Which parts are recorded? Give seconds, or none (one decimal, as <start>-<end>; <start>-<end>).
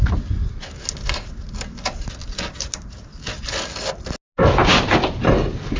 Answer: 0.0-5.8